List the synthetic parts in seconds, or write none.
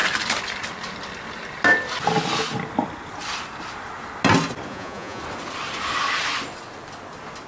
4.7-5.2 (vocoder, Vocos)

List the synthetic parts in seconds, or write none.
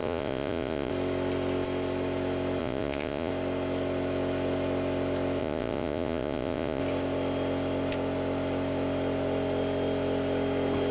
0.0-0.9 (vocoder, Vocos); 2.6-3.3; 5.4-6.8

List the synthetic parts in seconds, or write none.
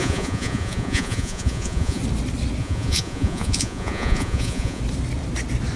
0.0-2.0 (vocoder, Vocos); 2.6-4.8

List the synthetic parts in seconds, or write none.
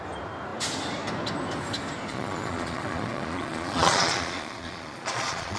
2.1-5.6 (vocoder, Vocos)